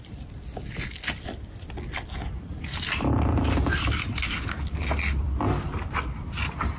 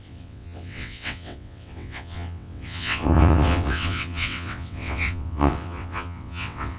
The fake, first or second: second